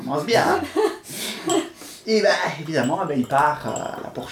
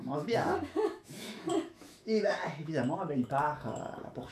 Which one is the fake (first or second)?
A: second